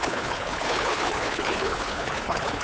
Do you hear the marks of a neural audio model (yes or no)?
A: yes